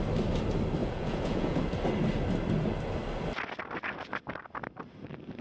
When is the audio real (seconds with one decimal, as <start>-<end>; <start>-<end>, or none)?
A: 0.0-0.8; 1.6-5.4